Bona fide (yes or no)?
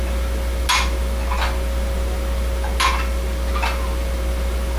yes